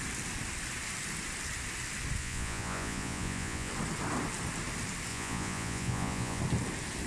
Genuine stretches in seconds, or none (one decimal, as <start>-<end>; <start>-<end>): 0.0-2.2; 3.7-5.1; 6.4-7.1